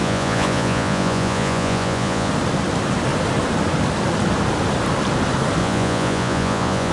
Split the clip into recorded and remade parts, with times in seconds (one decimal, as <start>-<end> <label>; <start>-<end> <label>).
0.0-2.3 remade; 2.3-5.6 recorded; 5.6-6.9 remade